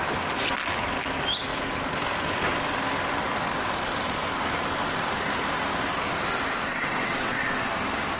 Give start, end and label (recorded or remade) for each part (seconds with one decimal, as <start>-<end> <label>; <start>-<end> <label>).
0.0-6.7 recorded; 6.7-7.7 remade; 7.7-8.2 recorded